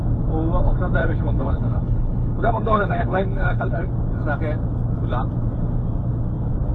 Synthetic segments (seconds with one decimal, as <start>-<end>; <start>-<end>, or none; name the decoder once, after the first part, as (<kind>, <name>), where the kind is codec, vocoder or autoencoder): 1.0-3.9 (codec, HILCodec)